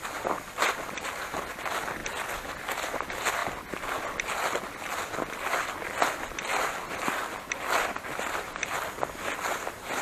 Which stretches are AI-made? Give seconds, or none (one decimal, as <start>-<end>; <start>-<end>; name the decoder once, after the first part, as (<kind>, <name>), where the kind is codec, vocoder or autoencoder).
none